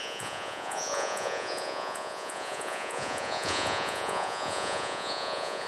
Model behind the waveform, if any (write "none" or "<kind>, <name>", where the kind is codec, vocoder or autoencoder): vocoder, Vocos